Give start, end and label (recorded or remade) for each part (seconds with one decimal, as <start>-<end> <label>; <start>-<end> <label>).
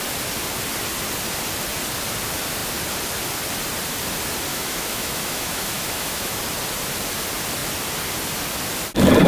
0.0-4.5 recorded; 4.5-6.4 remade; 6.4-9.3 recorded